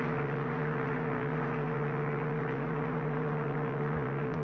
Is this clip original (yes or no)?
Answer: no